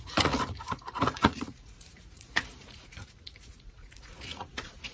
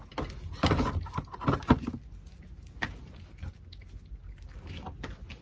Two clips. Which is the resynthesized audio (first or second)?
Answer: first